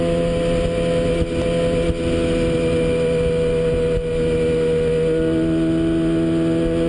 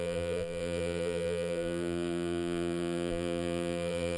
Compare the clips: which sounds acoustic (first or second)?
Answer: first